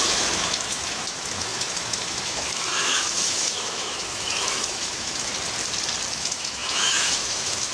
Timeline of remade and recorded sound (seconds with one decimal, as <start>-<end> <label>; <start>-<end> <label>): 0.0-5.3 remade; 5.3-6.1 recorded; 6.1-7.7 remade